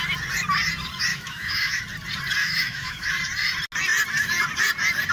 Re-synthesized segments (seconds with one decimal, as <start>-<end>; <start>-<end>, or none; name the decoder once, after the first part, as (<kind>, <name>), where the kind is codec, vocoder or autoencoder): 1.1-1.8 (autoencoder, DAC-VAE); 2.4-3.1